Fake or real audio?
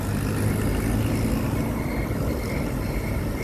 real